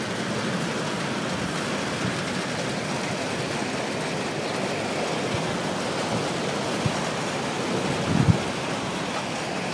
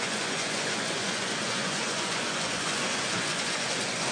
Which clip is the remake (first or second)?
second